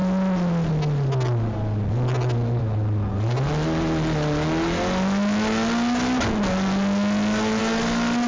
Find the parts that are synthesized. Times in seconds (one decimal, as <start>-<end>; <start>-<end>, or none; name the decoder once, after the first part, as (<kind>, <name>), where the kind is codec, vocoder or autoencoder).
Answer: none